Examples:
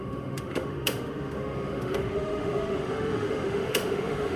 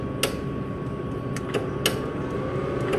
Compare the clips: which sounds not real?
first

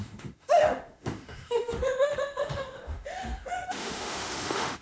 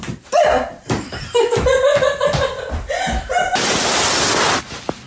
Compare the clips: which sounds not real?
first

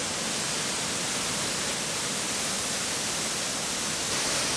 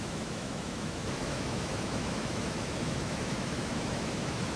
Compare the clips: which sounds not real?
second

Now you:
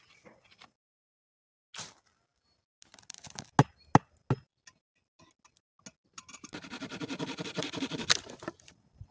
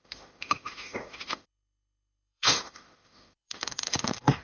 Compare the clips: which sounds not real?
second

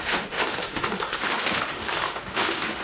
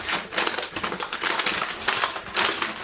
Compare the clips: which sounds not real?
first